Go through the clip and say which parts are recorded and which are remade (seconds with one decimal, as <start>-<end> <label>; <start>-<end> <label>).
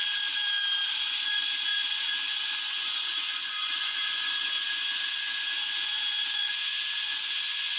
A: 0.0-1.0 recorded; 1.0-7.8 remade